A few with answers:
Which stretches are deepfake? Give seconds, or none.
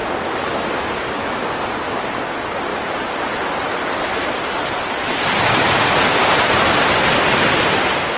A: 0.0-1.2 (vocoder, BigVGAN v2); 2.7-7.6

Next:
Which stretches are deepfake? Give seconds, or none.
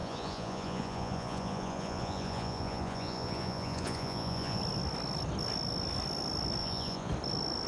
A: 0.0-4.6 (vocoder, Vocos); 6.6-7.1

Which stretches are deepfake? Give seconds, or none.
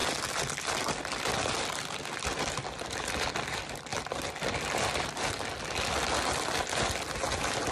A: none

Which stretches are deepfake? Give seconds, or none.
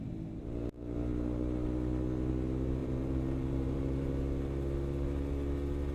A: 2.8-4.1 (vocoder, BigVGAN v2)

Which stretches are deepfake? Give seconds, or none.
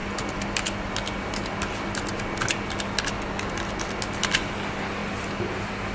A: none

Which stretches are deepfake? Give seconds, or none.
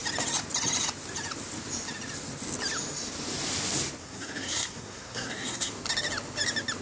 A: 4.0-5.7 (codec, SNAC)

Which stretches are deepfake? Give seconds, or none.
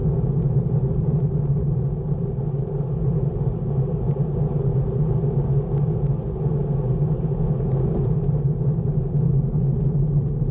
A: none